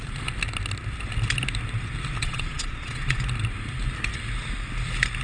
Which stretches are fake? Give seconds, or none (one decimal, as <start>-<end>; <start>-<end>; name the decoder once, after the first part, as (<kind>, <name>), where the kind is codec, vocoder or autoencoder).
2.2-3.2 (vocoder, Vocos)